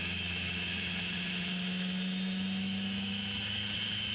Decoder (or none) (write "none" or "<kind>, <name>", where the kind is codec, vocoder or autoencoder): autoencoder, DAC-VAE